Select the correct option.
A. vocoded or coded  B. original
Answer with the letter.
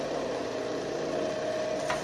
B